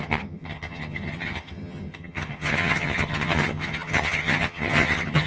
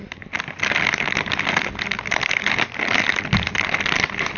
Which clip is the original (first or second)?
second